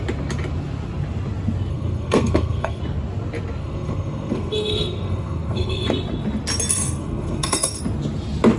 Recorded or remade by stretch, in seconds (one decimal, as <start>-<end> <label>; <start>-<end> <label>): 0.0-1.7 recorded; 1.7-2.8 remade; 2.8-3.6 recorded; 3.6-5.9 remade; 5.9-6.7 recorded; 6.7-7.8 remade; 7.8-8.6 recorded